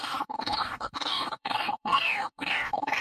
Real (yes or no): no